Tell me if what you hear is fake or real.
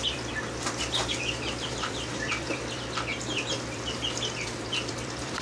fake